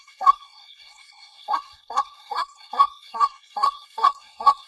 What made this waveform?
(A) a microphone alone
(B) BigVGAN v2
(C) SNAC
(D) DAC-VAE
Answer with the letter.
C